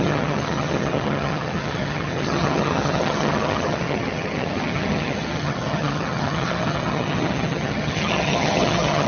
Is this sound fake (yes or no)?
yes